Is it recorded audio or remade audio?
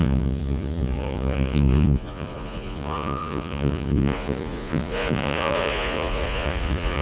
remade